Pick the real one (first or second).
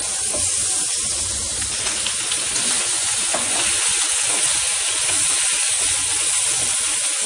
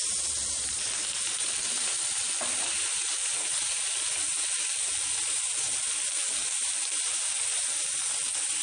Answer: second